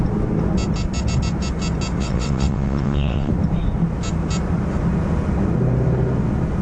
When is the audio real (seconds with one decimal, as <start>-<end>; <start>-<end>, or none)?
0.0-2.0; 3.3-6.6